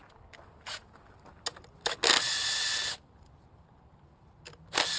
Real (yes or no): yes